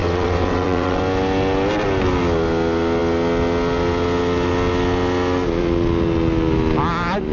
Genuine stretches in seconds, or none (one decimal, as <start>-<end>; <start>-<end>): 1.0-7.3